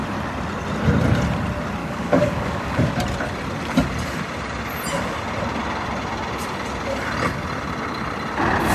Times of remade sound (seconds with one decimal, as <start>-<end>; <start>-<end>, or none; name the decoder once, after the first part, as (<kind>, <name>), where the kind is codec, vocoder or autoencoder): 1.8-2.9 (codec, DAC)